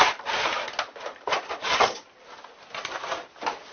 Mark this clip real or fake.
real